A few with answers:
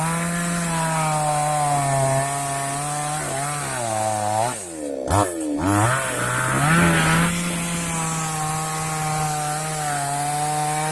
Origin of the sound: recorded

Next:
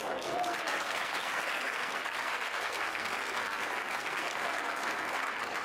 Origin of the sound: remade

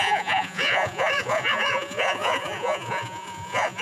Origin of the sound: remade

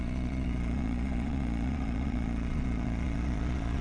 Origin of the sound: remade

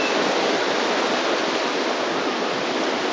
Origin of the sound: recorded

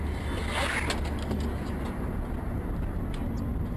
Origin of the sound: recorded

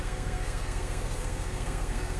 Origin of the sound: remade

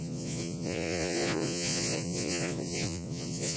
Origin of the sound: remade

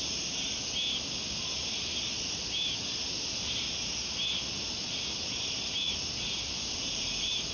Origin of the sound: recorded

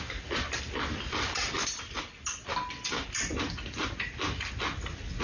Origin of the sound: recorded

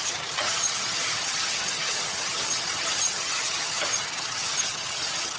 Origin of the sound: remade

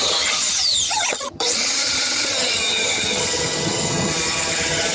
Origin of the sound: remade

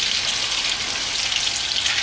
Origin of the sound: recorded